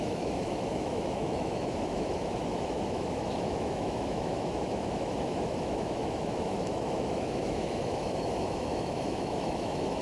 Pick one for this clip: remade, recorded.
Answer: remade